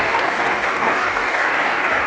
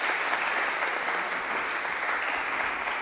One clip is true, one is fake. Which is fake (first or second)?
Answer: first